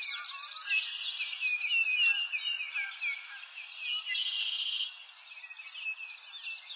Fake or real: real